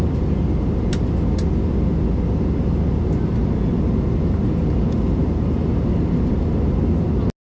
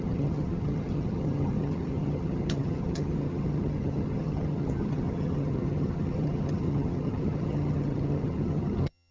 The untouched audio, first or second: first